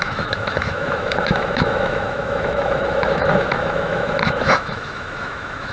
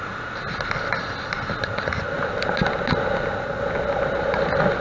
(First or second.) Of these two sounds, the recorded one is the second